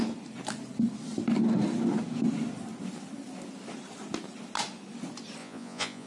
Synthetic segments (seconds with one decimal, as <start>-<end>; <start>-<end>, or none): 5.4-6.1